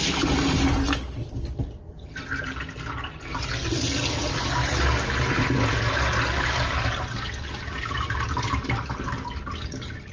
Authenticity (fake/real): real